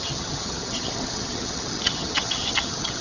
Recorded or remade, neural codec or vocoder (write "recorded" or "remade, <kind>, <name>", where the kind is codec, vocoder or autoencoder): remade, vocoder, HiFi-GAN